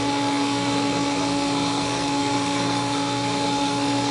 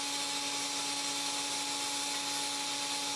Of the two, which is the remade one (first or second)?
first